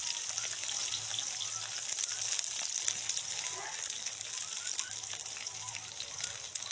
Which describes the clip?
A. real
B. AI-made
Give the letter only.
A